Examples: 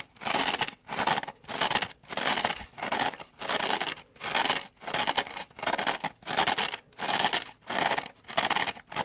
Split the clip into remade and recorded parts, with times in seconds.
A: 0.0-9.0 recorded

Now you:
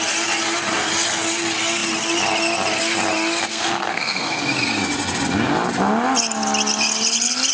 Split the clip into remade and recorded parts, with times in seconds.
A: 0.0-3.5 recorded; 3.5-4.4 remade; 4.4-7.5 recorded

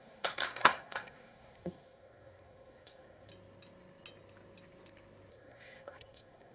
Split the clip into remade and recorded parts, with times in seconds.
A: 0.0-3.3 remade; 3.3-5.3 recorded; 5.3-6.5 remade

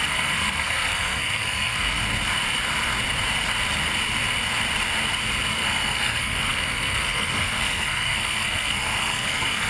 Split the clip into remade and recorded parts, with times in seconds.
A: 0.0-2.0 remade; 2.0-5.5 recorded; 5.5-9.7 remade

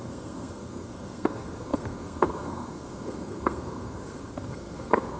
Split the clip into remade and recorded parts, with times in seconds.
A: 0.0-5.2 remade

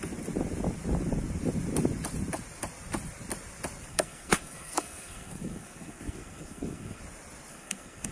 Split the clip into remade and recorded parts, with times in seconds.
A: 0.0-3.9 recorded; 3.9-7.0 remade; 7.0-7.5 recorded; 7.5-8.1 remade

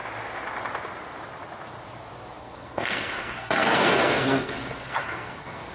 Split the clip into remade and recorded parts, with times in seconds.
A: 0.0-2.4 recorded; 2.4-5.7 remade